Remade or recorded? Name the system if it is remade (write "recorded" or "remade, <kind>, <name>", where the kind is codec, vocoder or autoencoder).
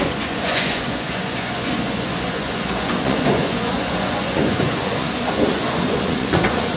remade, vocoder, Vocos